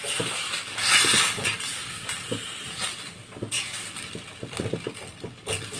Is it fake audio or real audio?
real